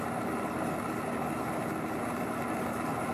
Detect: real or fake real